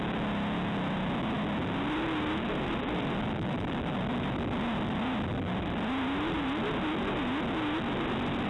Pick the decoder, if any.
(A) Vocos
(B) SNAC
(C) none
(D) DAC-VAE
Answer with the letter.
C